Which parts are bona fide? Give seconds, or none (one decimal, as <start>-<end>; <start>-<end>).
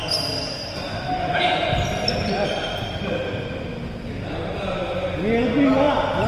0.7-2.1; 4.1-6.3